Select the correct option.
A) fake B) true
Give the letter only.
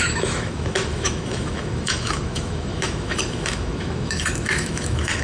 A